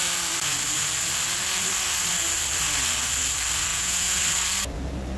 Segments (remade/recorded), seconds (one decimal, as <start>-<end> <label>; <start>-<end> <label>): 0.0-3.7 recorded; 3.7-4.2 remade; 4.2-5.2 recorded